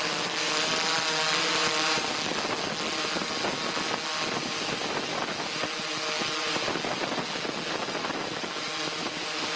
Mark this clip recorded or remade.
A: recorded